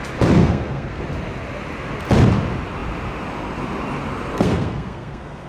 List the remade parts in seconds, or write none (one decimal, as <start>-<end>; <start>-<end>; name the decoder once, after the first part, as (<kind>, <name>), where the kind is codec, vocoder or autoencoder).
0.4-1.0 (codec, SNAC); 4.3-5.5

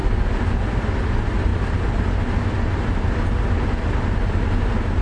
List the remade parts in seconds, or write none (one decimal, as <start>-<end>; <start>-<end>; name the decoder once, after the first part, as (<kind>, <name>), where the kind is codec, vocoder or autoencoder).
none

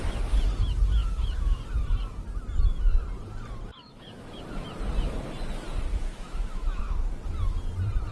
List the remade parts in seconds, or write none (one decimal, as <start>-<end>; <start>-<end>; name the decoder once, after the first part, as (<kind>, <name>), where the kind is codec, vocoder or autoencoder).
1.0-1.6 (autoencoder, DAC-VAE); 3.7-4.4; 5.9-6.8

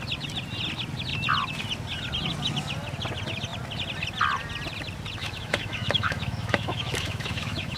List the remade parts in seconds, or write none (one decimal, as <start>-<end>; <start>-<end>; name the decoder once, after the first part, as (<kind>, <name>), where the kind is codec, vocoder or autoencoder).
5.2-7.8 (autoencoder, DAC-VAE)

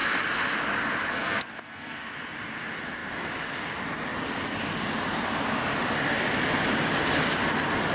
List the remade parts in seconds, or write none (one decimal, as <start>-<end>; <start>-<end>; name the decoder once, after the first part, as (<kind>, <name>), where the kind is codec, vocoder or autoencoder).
1.1-2.1 (codec, SNAC)

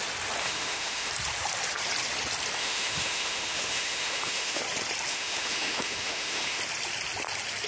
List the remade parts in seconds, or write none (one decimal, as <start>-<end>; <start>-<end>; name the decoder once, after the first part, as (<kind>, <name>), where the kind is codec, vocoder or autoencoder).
0.4-1.1 (autoencoder, DAC-VAE); 2.6-4.6; 5.1-6.6

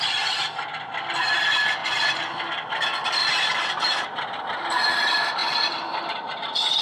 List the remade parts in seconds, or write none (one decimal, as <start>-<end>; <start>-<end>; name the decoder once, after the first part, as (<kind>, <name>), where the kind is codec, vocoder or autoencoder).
1.8-2.4 (vocoder, BigVGAN v2)

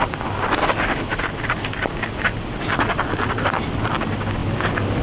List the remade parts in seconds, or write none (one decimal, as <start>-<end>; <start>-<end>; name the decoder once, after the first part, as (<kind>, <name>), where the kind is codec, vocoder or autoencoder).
none